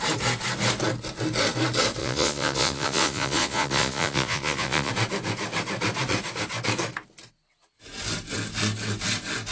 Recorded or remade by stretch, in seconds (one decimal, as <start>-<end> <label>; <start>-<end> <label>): 0.0-2.0 recorded; 2.0-4.9 remade; 4.9-9.5 recorded